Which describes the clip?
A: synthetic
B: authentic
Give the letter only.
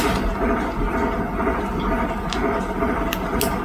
B